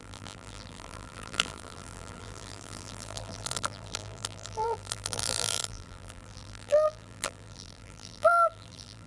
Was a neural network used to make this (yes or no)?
yes